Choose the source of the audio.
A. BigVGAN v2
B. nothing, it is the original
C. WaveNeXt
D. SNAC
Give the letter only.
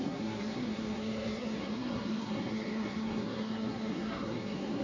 D